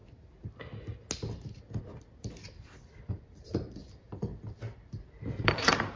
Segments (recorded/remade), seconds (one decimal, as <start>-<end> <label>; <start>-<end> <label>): 0.0-3.1 recorded; 3.1-4.3 remade; 4.3-5.4 recorded; 5.4-6.0 remade